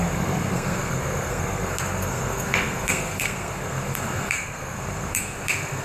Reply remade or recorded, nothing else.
remade